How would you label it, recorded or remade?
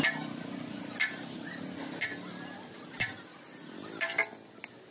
recorded